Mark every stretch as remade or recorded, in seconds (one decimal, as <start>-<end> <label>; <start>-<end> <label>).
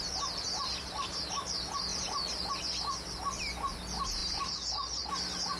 0.0-1.9 recorded; 1.9-2.5 remade; 2.5-5.6 recorded